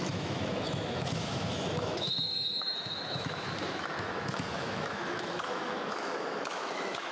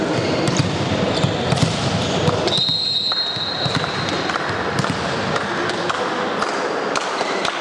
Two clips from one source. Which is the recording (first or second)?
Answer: second